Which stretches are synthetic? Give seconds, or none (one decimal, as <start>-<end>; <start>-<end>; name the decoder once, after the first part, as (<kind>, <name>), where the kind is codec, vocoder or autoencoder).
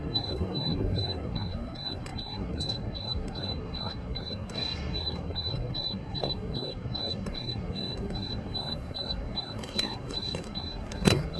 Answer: 0.0-11.4 (codec, SNAC)